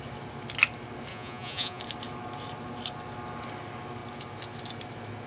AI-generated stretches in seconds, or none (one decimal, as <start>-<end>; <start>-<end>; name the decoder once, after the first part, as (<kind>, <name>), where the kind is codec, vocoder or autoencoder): 1.1-1.8 (vocoder, Vocos)